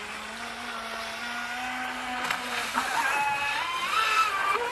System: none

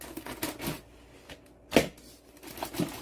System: none